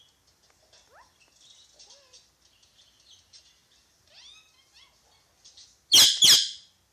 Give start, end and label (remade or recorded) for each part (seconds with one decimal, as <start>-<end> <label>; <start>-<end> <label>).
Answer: 0.0-6.9 recorded